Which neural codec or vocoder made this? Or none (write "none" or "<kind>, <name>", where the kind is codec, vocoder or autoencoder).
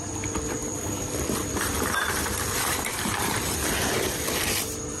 vocoder, BigVGAN v2